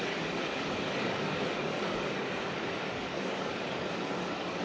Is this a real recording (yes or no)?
no